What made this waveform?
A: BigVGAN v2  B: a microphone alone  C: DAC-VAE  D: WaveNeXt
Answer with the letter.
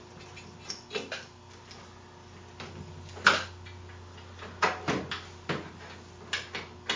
B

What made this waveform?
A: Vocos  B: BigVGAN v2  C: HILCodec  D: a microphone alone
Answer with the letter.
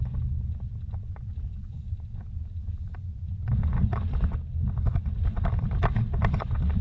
D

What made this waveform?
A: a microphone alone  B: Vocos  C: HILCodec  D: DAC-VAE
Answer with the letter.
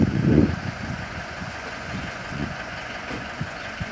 B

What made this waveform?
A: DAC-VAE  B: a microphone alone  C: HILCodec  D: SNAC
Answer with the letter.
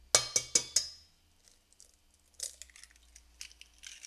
B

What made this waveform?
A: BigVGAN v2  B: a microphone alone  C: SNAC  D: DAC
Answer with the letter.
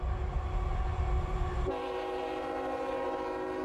B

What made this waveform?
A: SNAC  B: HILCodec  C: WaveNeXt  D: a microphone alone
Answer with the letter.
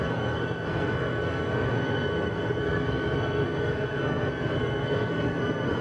A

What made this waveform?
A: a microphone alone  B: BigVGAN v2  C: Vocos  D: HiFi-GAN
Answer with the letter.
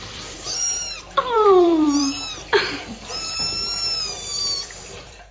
B